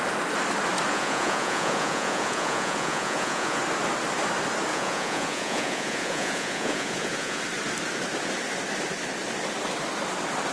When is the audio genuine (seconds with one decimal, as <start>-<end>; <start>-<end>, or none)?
0.0-0.9; 3.6-4.7; 7.4-10.5

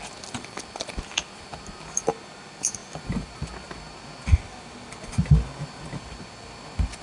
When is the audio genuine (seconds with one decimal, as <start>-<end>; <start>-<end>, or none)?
0.0-7.0

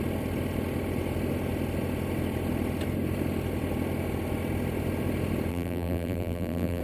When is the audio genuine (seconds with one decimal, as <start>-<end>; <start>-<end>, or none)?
0.0-5.5

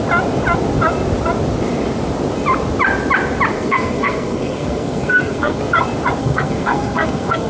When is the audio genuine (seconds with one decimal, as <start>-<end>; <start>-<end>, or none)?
0.0-3.5; 5.6-6.2